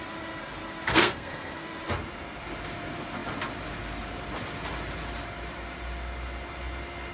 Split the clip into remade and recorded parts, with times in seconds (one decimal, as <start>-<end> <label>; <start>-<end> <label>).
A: 0.0-0.9 recorded; 0.9-1.6 remade; 1.6-7.1 recorded